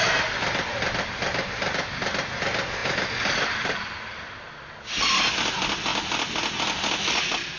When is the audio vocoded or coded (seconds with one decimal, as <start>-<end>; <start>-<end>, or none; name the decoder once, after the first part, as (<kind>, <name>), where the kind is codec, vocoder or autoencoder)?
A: none